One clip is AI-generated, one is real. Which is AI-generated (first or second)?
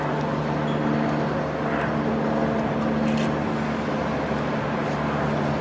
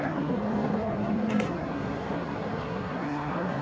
second